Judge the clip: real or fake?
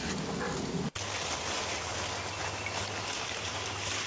real